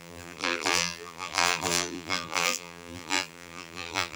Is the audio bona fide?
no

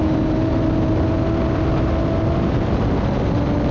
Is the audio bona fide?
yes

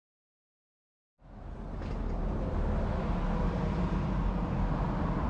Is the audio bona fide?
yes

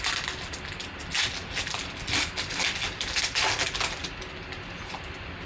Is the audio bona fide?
yes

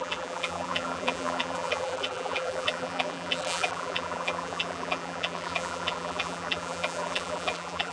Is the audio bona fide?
no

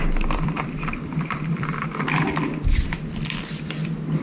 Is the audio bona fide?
no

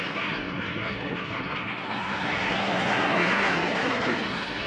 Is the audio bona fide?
no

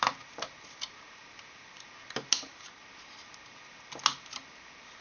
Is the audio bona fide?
yes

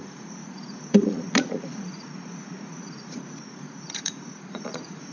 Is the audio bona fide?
no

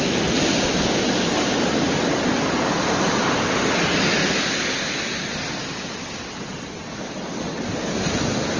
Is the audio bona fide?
yes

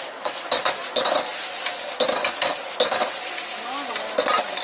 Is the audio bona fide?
yes